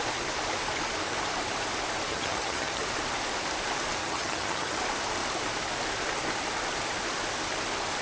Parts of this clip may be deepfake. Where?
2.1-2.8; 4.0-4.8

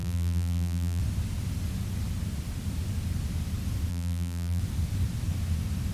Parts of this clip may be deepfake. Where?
0.0-1.0; 3.9-4.6

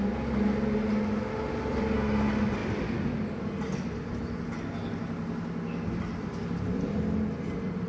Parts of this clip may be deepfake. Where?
none

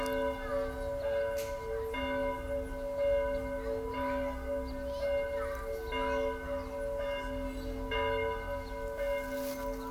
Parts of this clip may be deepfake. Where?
none

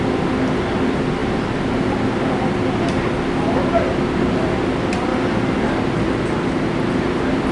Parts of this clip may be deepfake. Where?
none